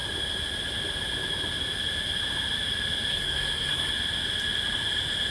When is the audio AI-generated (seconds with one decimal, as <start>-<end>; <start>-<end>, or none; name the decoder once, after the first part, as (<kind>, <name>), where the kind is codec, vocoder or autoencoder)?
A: 3.1-3.9 (codec, SNAC)